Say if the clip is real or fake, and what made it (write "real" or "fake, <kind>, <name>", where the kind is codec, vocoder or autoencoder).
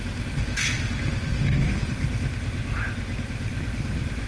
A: real